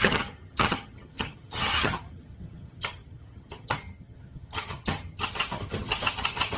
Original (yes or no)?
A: no